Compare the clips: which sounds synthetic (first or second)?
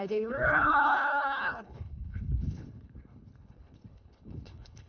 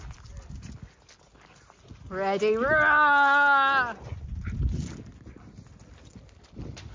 first